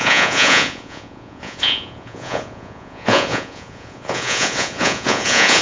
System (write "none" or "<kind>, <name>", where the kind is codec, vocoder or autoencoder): vocoder, Vocos